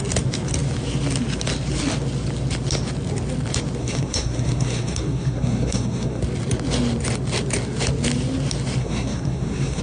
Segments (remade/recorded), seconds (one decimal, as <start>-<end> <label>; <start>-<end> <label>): 0.0-3.8 recorded; 3.8-6.2 remade; 6.2-8.8 recorded; 8.8-9.8 remade

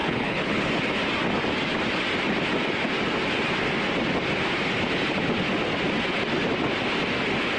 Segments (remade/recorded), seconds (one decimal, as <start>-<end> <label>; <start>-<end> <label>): 0.0-0.7 remade; 0.7-7.6 recorded

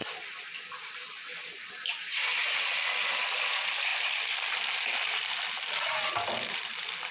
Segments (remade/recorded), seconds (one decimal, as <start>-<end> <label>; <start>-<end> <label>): 0.0-3.4 remade; 3.4-3.9 recorded; 3.9-5.1 remade; 5.1-7.1 recorded

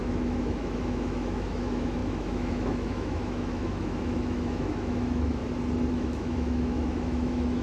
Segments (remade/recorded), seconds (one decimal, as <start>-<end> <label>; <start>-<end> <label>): 0.0-5.4 remade; 5.4-5.9 recorded; 5.9-7.6 remade

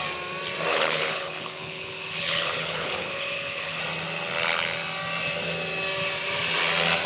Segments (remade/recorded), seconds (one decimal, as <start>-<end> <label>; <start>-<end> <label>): 0.0-0.7 recorded; 0.7-3.8 remade; 3.8-7.1 recorded

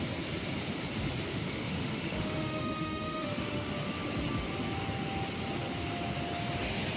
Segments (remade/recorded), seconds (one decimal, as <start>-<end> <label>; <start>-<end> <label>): 0.0-1.3 recorded; 1.3-3.7 remade; 3.7-7.0 recorded